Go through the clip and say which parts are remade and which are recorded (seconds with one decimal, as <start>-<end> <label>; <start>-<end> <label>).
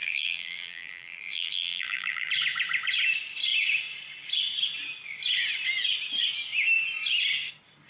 0.0-2.3 remade; 2.3-7.9 recorded